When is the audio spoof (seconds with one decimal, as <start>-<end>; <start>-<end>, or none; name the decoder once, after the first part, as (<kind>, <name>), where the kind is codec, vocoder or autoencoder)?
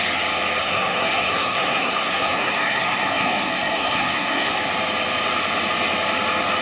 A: 0.6-4.6 (codec, SNAC)